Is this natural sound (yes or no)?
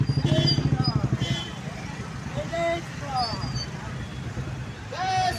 yes